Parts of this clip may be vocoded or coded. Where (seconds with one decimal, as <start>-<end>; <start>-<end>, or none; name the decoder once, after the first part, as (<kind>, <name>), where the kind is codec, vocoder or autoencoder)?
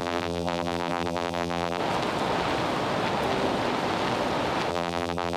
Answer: 0.0-1.8 (vocoder, BigVGAN v2); 4.7-5.4